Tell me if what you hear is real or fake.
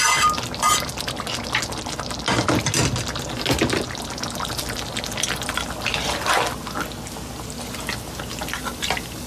real